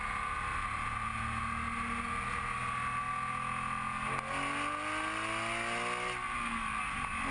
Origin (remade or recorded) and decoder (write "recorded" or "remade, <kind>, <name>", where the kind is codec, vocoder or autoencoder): recorded